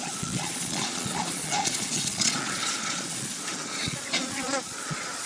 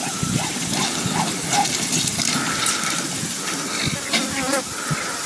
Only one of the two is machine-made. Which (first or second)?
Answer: first